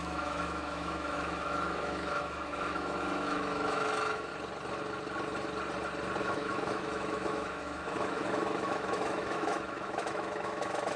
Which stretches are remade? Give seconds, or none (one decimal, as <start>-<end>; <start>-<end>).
0.0-4.3; 6.2-11.0